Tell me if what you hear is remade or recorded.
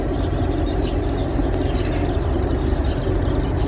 recorded